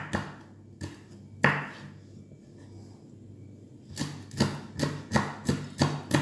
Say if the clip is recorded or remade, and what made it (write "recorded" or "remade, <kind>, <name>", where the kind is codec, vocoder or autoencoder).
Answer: recorded